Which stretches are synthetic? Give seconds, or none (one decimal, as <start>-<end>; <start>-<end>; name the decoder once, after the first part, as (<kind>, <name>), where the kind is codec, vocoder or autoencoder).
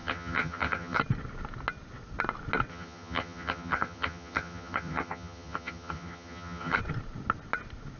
0.0-1.0 (vocoder, HiFi-GAN); 2.7-6.8